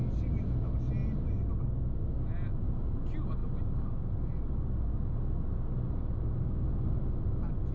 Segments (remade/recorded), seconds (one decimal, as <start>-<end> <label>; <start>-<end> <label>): 0.0-7.7 recorded